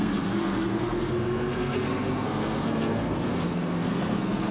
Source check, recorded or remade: remade